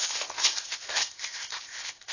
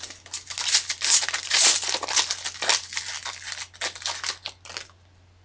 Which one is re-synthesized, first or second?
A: first